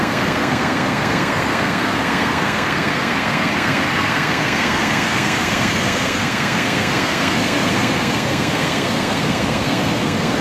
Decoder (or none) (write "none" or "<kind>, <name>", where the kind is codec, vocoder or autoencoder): codec, SNAC